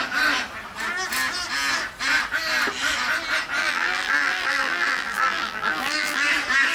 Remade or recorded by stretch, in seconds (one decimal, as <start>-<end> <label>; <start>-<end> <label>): 0.0-3.6 recorded; 3.6-6.3 remade; 6.3-6.7 recorded